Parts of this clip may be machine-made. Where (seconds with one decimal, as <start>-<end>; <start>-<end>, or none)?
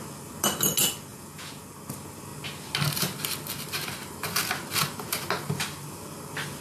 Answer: 1.1-1.7